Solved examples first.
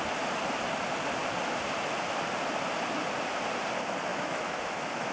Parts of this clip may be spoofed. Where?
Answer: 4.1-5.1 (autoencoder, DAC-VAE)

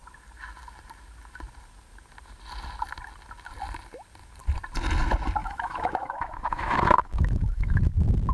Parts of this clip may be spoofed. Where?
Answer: 5.4-7.8 (autoencoder, DAC-VAE)

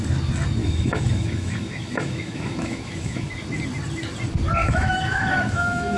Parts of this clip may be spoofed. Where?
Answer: 0.6-3.3 (autoencoder, DAC-VAE); 4.6-6.0

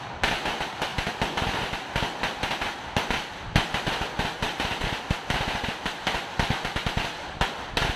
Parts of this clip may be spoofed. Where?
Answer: none

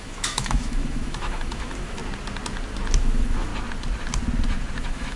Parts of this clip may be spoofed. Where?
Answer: 0.0-2.0 (autoencoder, DAC-VAE); 3.0-3.5; 4.8-5.2